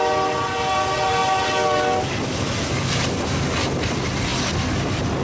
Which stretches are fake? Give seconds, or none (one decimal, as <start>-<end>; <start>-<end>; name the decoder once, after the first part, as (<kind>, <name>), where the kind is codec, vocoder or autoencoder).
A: none